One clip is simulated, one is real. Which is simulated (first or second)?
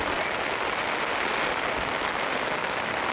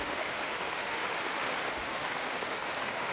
second